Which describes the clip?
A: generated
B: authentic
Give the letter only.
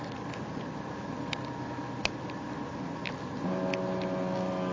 B